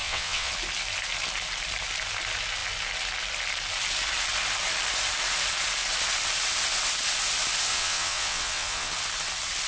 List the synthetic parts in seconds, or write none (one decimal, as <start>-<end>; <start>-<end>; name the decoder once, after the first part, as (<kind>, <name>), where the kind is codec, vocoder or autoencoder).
0.0-0.5 (vocoder, WaveNeXt); 7.7-8.9